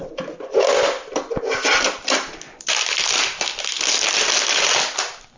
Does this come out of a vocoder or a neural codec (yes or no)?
no